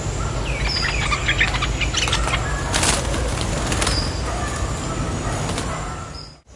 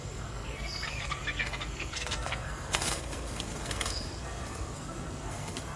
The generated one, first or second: second